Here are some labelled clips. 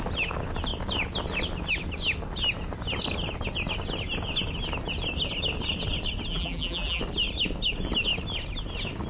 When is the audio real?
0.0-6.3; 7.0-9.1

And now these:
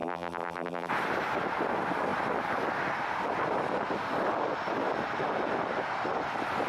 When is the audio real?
0.9-6.7

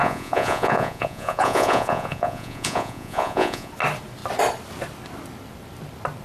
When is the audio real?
3.7-6.2

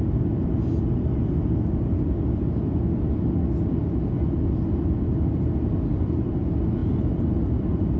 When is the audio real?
0.0-8.0

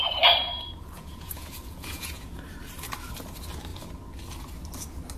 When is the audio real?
0.0-0.4; 2.3-5.2